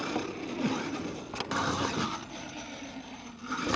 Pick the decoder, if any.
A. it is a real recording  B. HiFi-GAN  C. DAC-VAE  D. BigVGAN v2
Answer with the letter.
A